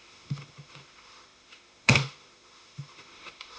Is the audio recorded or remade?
remade